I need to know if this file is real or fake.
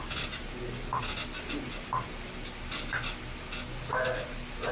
real